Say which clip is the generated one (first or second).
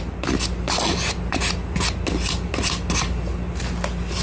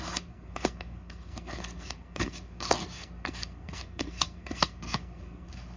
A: second